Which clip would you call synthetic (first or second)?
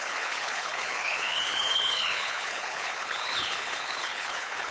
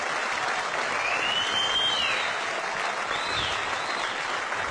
first